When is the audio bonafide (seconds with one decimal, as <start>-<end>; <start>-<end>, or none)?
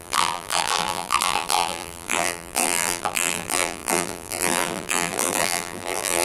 none